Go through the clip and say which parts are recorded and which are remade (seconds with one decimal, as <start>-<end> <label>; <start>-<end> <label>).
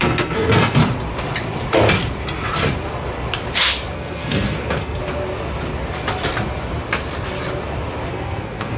0.0-0.8 remade; 0.8-3.9 recorded; 3.9-5.0 remade; 5.0-8.1 recorded; 8.1-8.8 remade